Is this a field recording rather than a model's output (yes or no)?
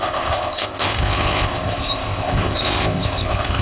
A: no